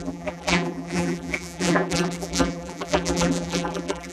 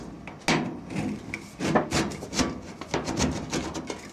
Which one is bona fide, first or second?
second